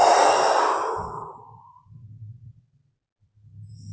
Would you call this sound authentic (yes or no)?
yes